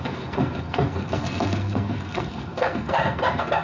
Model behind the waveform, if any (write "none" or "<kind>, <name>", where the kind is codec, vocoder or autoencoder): codec, SNAC